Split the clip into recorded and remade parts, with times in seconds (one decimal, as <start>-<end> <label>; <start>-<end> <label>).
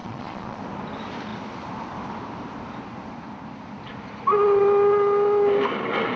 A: 0.0-0.6 remade; 0.6-6.2 recorded